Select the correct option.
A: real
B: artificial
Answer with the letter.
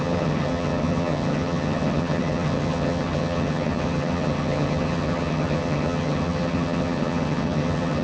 B